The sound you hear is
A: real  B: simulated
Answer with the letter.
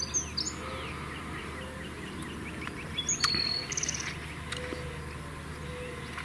A